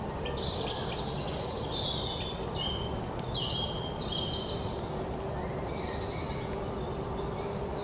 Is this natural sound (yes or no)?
yes